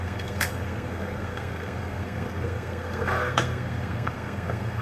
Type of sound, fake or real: fake